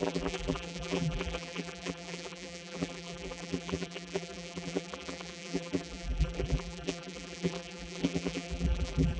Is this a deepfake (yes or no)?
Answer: yes